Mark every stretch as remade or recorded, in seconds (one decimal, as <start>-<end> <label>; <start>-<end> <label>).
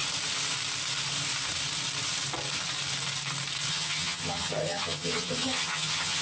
0.0-3.7 recorded; 3.7-6.2 remade